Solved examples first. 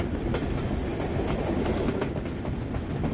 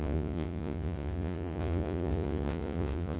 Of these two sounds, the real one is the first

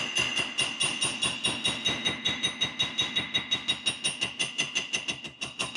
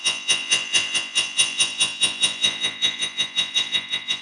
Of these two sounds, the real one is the first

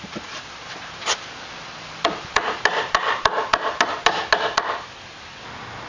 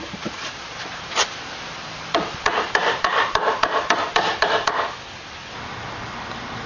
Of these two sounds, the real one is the first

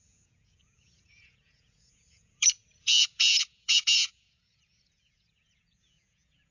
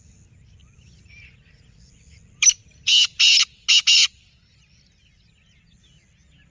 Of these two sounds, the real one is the second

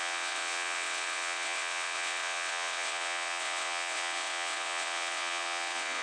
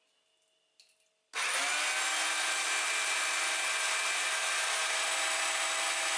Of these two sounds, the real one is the second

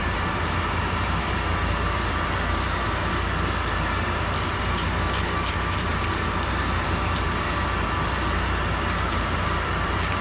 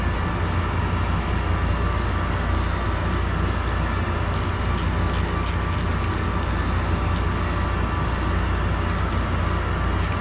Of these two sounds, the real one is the second